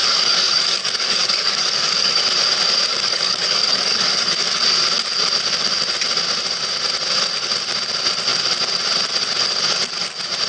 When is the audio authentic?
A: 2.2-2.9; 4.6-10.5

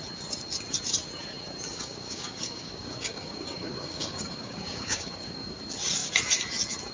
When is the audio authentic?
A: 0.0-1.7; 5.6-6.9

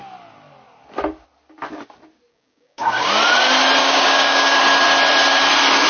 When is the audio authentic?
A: 0.0-2.3; 3.1-3.8; 4.6-5.9

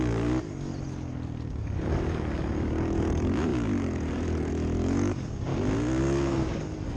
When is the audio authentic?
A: 0.7-1.5; 5.5-6.0

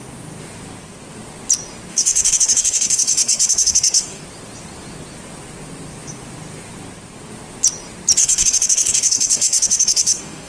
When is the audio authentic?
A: 0.0-1.9; 4.2-8.2

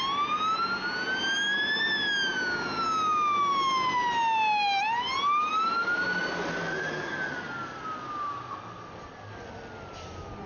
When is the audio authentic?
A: 0.0-10.5

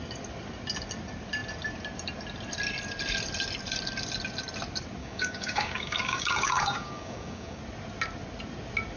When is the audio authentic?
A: 0.0-5.0; 7.6-9.0